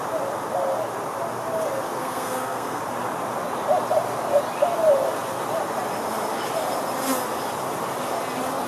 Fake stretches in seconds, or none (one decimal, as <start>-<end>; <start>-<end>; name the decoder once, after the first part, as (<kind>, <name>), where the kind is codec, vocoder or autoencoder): 2.0-2.8 (codec, SNAC)